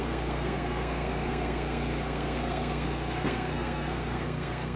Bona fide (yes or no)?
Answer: no